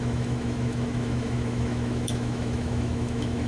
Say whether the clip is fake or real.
fake